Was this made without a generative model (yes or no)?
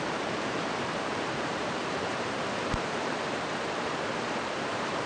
no